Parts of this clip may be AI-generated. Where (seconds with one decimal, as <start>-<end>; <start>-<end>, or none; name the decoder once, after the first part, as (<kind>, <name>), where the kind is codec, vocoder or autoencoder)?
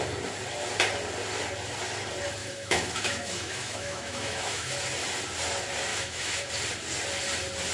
2.4-4.7 (autoencoder, DAC-VAE); 5.9-6.5